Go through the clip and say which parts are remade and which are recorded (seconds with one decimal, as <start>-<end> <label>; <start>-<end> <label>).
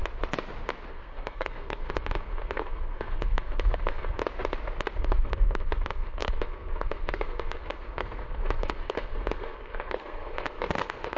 0.0-0.9 recorded; 0.9-4.2 remade; 4.2-5.0 recorded; 5.0-11.2 remade